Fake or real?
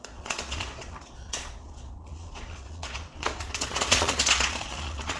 fake